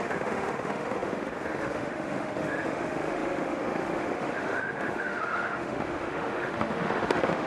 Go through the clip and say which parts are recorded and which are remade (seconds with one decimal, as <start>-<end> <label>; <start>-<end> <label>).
0.0-7.5 remade